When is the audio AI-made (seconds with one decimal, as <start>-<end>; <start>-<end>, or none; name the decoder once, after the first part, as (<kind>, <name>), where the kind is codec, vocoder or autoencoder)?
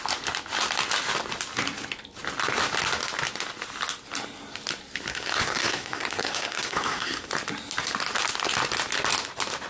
5.1-7.3 (codec, SNAC)